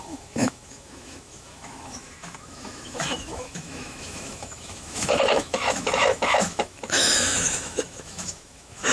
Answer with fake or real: fake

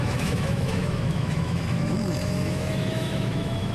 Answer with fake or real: fake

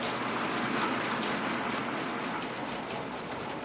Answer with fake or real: real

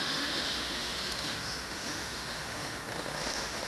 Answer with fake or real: fake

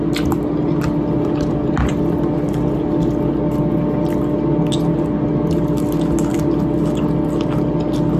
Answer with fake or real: real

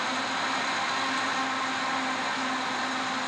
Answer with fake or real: real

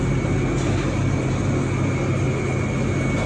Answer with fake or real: real